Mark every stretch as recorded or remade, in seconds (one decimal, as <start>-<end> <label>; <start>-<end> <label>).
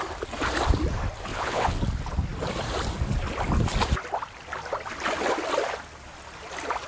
0.0-1.3 recorded; 1.3-1.8 remade; 1.8-6.9 recorded